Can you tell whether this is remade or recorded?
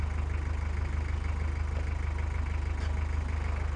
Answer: recorded